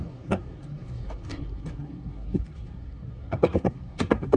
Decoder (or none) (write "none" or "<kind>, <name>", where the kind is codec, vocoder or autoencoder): codec, SNAC